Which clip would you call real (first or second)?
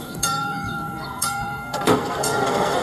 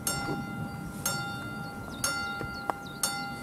second